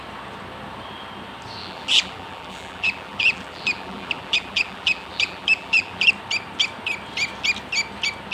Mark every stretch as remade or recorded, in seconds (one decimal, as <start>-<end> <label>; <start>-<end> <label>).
0.0-1.6 recorded; 1.6-6.1 remade; 6.1-8.3 recorded